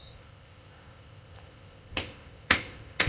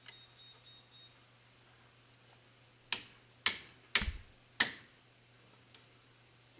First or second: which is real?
second